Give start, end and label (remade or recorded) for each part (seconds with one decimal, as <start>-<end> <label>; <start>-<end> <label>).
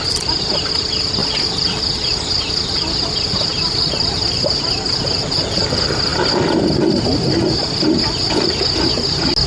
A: 0.0-9.5 recorded